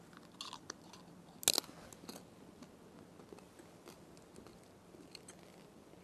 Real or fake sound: real